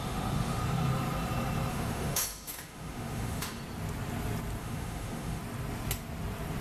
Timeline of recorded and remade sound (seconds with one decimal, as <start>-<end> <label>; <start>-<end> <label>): 0.0-0.6 remade; 0.6-1.7 recorded; 1.7-3.6 remade; 3.6-4.6 recorded; 4.6-5.4 remade; 5.4-6.6 recorded